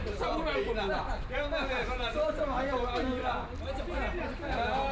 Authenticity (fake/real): real